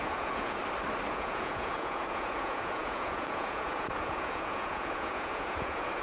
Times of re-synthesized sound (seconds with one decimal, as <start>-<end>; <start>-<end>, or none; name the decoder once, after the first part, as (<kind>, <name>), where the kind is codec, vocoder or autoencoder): 0.0-0.6 (vocoder, Vocos); 1.1-6.0